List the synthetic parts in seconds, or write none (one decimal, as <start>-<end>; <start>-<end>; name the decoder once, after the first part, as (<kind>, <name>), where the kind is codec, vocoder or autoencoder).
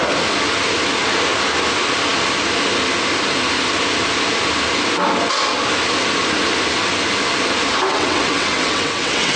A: 7.9-9.4 (vocoder, WaveNeXt)